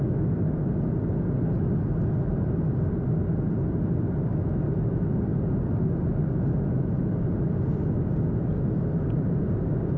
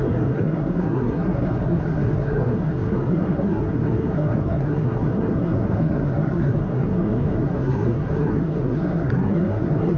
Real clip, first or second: first